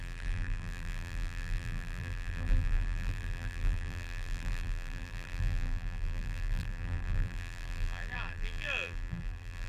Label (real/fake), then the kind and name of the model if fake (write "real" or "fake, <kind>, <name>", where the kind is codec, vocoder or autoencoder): fake, vocoder, BigVGAN v2